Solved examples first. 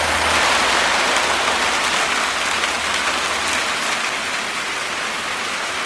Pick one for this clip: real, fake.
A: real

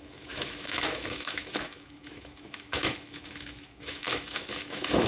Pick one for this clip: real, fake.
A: fake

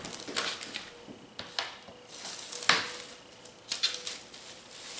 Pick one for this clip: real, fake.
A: real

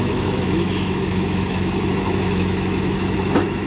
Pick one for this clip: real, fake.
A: fake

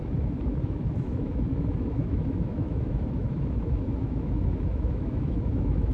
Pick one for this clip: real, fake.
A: fake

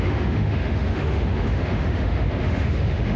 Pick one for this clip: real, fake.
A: fake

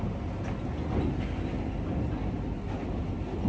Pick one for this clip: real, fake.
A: real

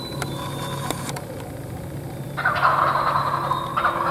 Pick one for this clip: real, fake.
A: real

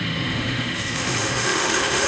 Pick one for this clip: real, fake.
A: fake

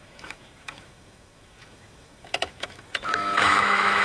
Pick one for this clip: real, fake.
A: fake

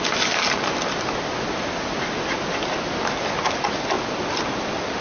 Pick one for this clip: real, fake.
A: real